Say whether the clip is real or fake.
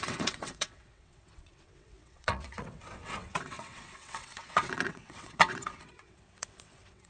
fake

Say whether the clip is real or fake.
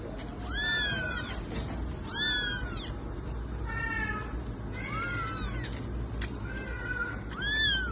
real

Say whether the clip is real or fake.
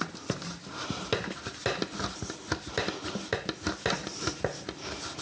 fake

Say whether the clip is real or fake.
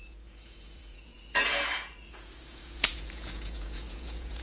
fake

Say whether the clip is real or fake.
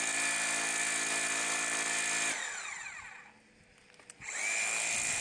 real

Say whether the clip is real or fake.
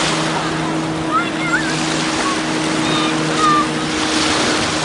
real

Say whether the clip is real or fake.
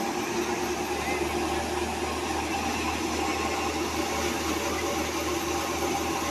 real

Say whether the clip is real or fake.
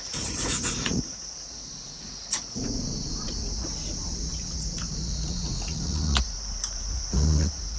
fake